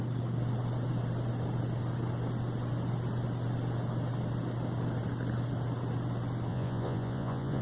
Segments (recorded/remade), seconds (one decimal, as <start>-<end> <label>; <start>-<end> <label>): 0.0-6.5 recorded; 6.5-7.6 remade